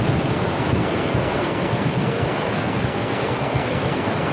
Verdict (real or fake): fake